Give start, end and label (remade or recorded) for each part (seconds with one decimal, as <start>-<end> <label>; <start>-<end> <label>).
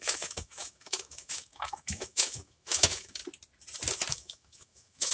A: 0.0-3.2 remade; 3.2-4.1 recorded; 4.1-5.1 remade